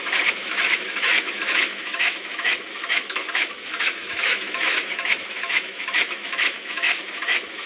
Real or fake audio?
fake